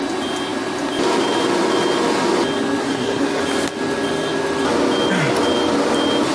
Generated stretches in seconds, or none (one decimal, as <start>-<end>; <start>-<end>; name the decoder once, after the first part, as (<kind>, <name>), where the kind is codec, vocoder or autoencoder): 2.8-3.4 (codec, SNAC)